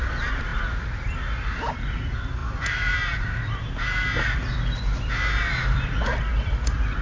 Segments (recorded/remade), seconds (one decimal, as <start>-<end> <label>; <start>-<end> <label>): 0.0-0.5 remade; 0.5-1.7 recorded; 1.7-7.0 remade